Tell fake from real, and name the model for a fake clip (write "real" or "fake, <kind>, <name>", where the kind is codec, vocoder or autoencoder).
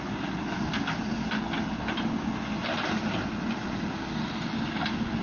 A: real